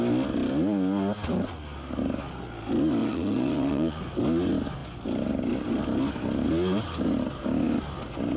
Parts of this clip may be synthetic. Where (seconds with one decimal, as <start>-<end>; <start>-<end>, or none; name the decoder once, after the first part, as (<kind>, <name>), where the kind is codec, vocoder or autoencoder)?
3.0-4.0 (vocoder, WaveNeXt)